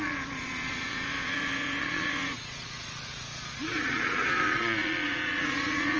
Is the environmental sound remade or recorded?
remade